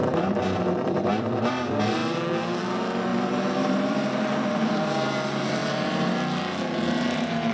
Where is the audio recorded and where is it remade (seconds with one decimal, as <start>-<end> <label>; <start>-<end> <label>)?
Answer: 0.0-1.5 remade; 1.5-3.1 recorded; 3.1-4.9 remade; 4.9-5.6 recorded; 5.6-6.1 remade; 6.1-7.5 recorded